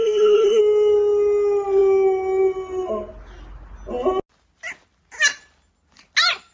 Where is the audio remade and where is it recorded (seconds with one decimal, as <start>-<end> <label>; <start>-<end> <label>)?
0.0-0.6 remade; 0.6-6.5 recorded